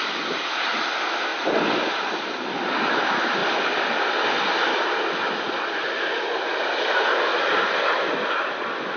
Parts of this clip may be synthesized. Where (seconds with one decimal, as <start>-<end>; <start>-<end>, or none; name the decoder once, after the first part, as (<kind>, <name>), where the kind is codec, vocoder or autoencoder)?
none